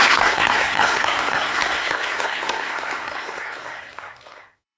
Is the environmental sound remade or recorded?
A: remade